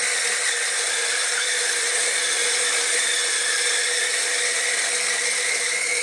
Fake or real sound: real